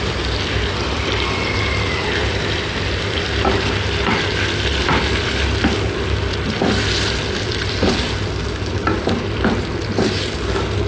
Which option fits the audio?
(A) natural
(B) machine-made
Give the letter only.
B